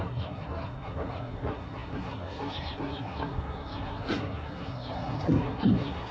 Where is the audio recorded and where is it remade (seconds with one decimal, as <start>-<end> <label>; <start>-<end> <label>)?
0.0-6.1 remade